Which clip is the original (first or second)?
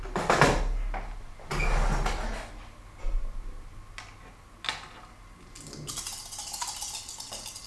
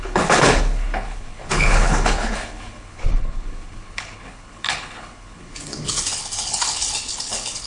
first